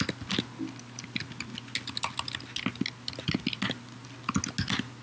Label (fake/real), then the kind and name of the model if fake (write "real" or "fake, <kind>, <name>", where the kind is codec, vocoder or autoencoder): real